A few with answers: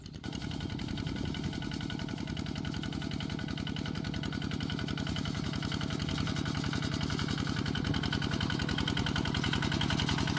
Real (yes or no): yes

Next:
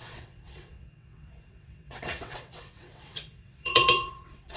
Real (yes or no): no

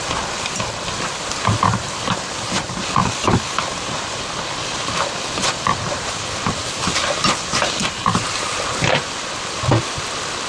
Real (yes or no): no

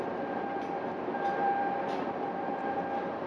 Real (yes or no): yes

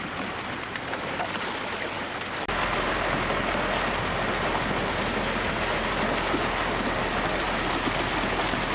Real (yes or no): yes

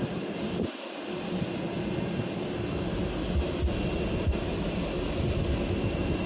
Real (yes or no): yes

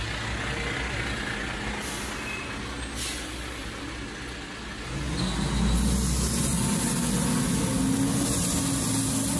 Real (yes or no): yes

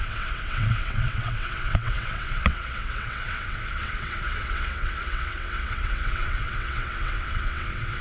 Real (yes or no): no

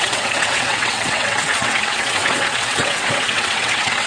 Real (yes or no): no